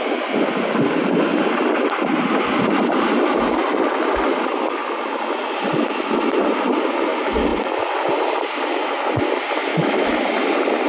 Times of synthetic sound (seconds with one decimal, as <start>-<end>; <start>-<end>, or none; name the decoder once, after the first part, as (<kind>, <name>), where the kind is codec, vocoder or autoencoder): 9.7-10.3 (autoencoder, DAC-VAE)